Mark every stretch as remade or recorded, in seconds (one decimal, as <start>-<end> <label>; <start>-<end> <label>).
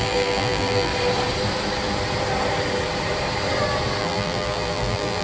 0.0-0.9 remade; 0.9-4.0 recorded; 4.0-5.2 remade